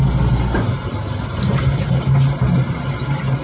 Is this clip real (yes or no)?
yes